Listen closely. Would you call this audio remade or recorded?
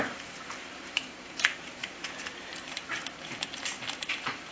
remade